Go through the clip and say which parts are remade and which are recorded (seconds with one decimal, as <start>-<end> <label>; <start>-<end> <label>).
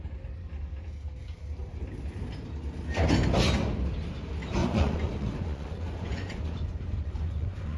0.0-4.6 recorded; 4.6-7.8 remade